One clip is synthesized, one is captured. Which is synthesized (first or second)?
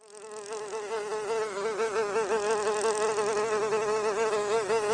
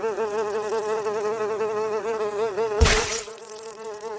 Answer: second